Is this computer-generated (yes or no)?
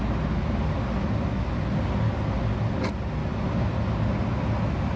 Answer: no